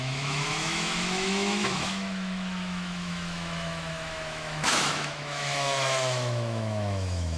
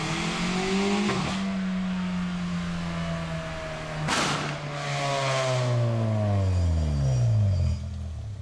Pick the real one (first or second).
second